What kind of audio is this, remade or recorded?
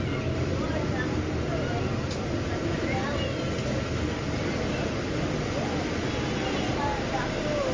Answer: recorded